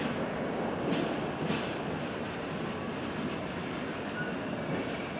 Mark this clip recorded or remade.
recorded